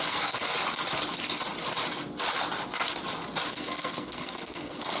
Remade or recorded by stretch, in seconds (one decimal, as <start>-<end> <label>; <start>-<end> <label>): 0.0-0.5 remade; 0.5-3.5 recorded; 3.5-5.0 remade